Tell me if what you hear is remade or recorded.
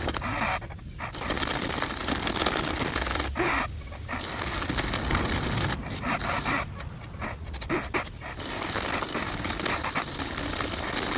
recorded